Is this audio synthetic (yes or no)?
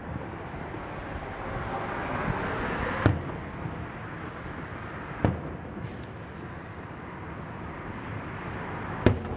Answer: no